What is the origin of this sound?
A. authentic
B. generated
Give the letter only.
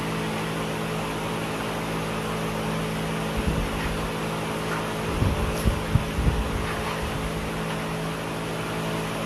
A